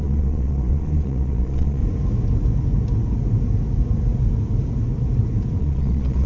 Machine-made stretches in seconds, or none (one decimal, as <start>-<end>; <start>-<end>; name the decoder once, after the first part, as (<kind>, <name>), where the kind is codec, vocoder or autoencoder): 0.0-1.8 (vocoder, Vocos); 5.6-6.3